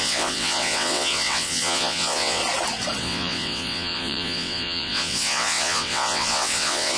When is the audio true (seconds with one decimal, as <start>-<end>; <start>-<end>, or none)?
2.4-3.0